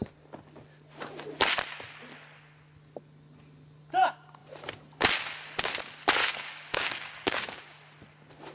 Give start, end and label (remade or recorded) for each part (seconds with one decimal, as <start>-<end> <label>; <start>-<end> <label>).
0.0-6.2 recorded; 6.2-7.6 remade; 7.6-8.5 recorded